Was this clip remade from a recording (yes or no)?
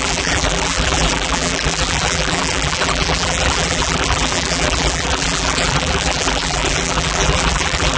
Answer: yes